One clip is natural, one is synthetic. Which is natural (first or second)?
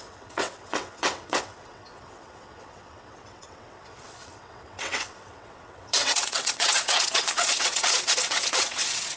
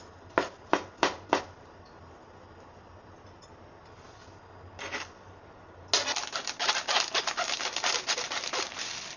second